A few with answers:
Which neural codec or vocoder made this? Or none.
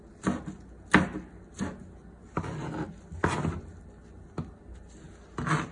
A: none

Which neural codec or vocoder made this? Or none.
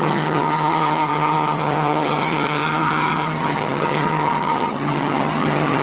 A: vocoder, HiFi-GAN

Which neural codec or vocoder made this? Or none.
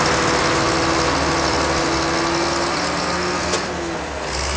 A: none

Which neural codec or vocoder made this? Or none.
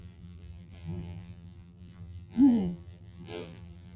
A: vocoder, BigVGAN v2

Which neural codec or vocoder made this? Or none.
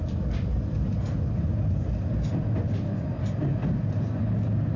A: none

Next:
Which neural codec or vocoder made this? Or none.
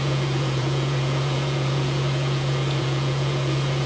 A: vocoder, Vocos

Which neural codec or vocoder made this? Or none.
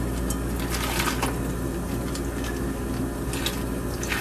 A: none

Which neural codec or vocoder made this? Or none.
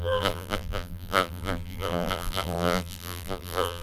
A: vocoder, BigVGAN v2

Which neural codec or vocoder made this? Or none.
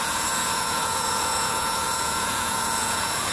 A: vocoder, Vocos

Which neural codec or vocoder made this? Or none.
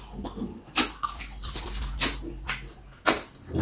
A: none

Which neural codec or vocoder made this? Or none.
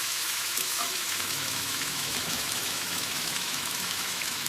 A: autoencoder, DAC-VAE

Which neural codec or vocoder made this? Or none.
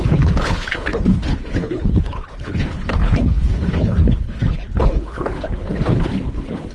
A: codec, HILCodec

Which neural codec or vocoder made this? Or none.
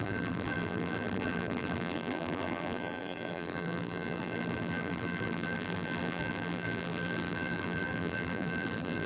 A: vocoder, BigVGAN v2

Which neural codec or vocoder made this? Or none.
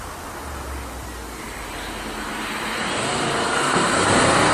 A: none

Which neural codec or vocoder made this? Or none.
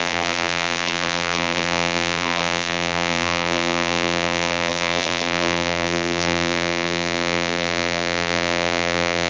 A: vocoder, BigVGAN v2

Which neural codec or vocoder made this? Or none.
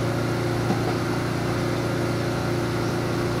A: none